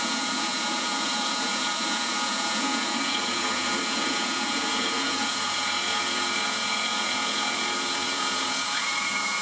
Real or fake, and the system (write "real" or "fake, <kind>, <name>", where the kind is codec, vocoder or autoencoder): fake, vocoder, Vocos